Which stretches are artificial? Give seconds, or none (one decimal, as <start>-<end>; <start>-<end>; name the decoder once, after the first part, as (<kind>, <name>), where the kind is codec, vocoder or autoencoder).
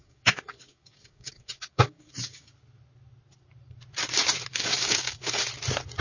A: 0.0-2.5 (codec, DAC); 4.5-5.4